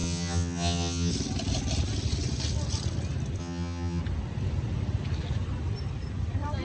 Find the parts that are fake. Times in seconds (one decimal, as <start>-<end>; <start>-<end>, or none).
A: 0.0-1.1; 3.4-4.0